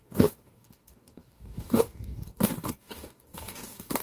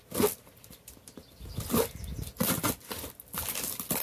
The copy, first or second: first